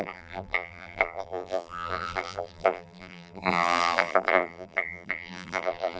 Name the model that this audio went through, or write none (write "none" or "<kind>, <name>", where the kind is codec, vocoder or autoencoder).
vocoder, BigVGAN v2